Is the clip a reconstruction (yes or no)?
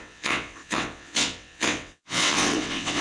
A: yes